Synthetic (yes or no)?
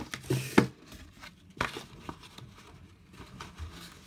no